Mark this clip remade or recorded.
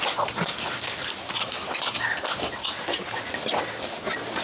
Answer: recorded